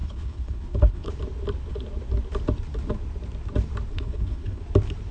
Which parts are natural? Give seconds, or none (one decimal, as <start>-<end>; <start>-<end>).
1.1-3.9; 4.6-5.1